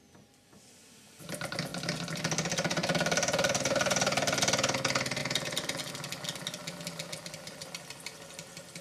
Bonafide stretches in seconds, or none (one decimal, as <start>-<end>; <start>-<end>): 0.0-2.8; 4.4-5.2; 5.9-6.6; 7.7-8.8